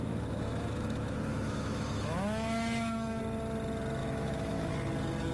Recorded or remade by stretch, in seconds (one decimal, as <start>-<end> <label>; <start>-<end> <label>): 0.0-3.2 remade; 3.2-4.0 recorded; 4.0-4.7 remade; 4.7-5.3 recorded